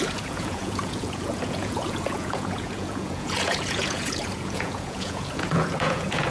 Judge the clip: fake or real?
fake